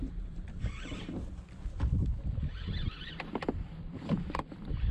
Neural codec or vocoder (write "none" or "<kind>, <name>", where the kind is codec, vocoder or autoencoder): vocoder, BigVGAN v2